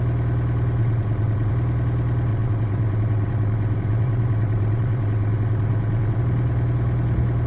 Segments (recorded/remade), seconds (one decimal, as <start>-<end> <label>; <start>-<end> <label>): 0.0-0.8 recorded; 0.8-1.5 remade; 1.5-2.3 recorded; 2.3-6.2 remade; 6.2-7.5 recorded